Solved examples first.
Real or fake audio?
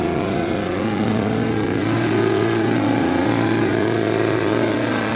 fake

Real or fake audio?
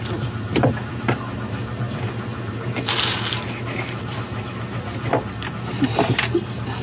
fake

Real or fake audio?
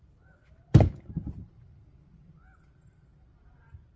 real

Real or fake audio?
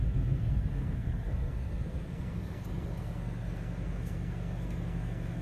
fake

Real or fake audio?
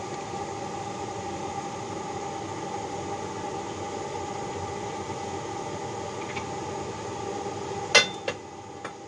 real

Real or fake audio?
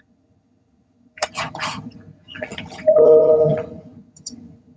fake